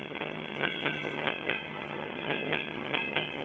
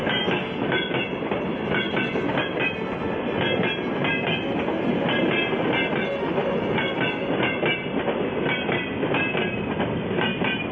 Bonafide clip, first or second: second